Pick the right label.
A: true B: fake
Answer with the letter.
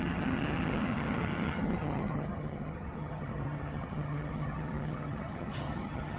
B